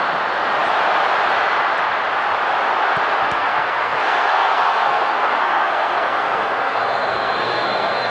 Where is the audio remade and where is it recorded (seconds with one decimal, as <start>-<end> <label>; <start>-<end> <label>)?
0.0-3.2 recorded; 3.2-8.1 remade